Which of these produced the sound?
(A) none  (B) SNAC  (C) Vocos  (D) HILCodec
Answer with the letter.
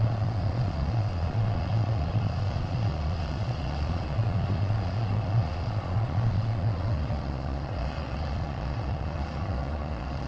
C